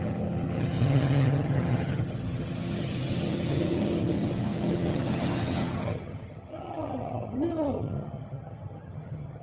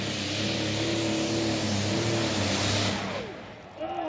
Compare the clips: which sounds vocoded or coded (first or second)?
first